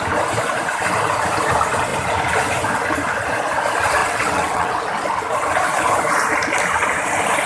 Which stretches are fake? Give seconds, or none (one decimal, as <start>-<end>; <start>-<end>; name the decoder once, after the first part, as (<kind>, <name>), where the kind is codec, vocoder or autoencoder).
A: 4.0-4.8 (vocoder, WaveNeXt)